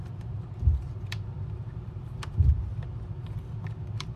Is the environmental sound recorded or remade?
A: remade